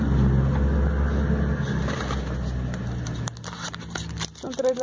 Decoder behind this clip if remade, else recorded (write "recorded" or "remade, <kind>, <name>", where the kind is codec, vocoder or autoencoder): recorded